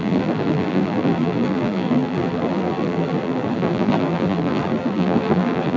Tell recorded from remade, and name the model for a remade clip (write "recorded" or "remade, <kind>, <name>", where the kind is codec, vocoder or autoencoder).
remade, vocoder, BigVGAN v2